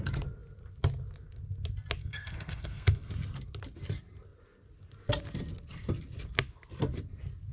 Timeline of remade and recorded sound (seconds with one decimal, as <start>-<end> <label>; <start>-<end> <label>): 0.0-2.0 recorded; 2.0-3.1 remade; 3.1-7.5 recorded